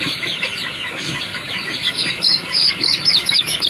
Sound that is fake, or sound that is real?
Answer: fake